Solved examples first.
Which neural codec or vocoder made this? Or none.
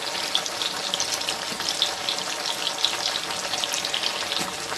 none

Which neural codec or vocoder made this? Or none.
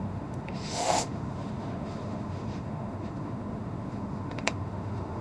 autoencoder, DAC-VAE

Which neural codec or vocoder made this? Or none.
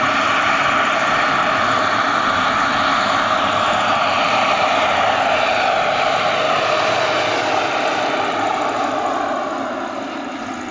none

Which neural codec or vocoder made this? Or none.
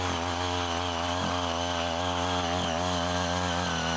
none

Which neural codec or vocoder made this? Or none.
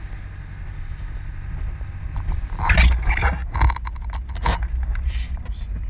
none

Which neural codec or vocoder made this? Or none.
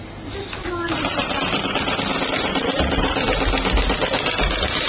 none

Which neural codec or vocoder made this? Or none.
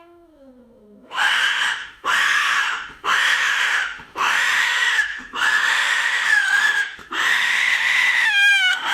autoencoder, DAC-VAE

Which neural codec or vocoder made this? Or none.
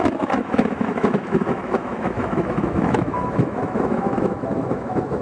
autoencoder, DAC-VAE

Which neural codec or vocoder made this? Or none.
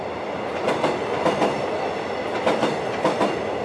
none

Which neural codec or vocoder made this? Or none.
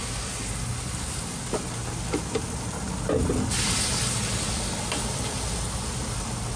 none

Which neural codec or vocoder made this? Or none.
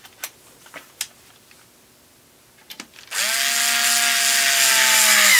none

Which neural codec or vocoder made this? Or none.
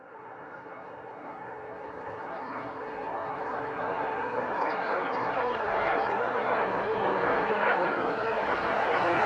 codec, SNAC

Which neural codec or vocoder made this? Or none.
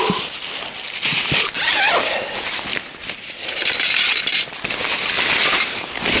none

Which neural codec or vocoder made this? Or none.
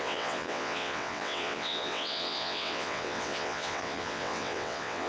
vocoder, WaveNeXt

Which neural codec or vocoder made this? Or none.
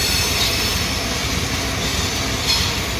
none